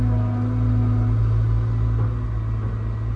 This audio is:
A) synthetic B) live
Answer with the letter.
B